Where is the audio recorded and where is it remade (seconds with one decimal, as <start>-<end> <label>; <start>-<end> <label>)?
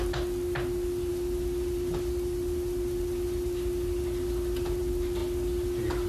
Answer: 0.0-1.1 recorded; 1.1-4.8 remade; 4.8-5.2 recorded; 5.2-6.1 remade